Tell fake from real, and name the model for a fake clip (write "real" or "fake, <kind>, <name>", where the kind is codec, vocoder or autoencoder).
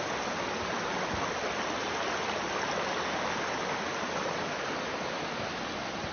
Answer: real